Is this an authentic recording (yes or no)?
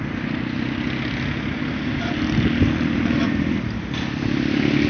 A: yes